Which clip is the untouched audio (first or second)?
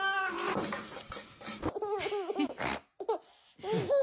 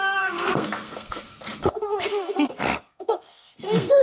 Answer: first